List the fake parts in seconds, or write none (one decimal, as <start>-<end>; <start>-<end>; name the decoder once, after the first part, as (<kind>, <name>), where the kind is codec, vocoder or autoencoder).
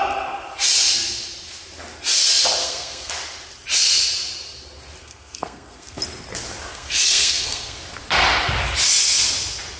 2.6-3.1 (codec, SNAC); 5.0-6.0; 6.7-7.8